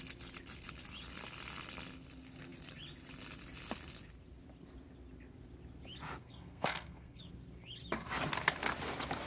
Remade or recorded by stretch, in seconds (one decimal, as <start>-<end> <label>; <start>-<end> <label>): 0.0-6.2 recorded; 6.2-7.2 remade; 7.2-9.3 recorded